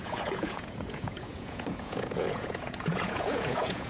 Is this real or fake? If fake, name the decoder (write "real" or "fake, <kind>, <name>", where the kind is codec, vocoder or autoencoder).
fake, vocoder, Vocos